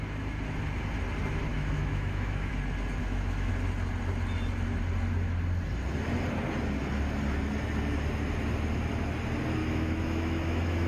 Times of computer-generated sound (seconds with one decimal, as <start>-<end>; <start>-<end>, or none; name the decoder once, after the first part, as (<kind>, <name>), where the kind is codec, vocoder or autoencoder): 1.5-2.5 (autoencoder, DAC-VAE); 3.0-3.5; 9.6-10.9